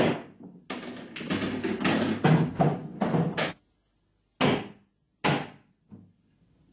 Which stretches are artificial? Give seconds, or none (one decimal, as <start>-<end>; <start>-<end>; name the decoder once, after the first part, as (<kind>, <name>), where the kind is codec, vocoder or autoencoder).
none